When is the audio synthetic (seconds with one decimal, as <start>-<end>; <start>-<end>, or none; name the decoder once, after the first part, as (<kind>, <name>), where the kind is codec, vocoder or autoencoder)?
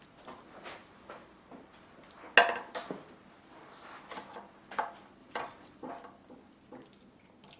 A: 0.8-1.5 (vocoder, BigVGAN v2); 5.2-5.9